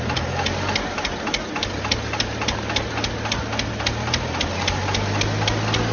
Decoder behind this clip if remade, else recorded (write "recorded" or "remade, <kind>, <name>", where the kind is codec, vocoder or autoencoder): recorded